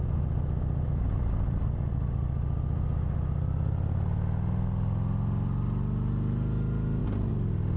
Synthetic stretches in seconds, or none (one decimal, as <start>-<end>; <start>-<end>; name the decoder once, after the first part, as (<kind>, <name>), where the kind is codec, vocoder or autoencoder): none